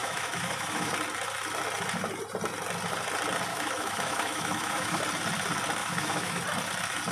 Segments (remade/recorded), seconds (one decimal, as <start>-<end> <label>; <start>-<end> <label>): 0.0-0.9 remade; 0.9-3.5 recorded; 3.5-5.0 remade; 5.0-5.8 recorded; 5.8-6.4 remade; 6.4-7.1 recorded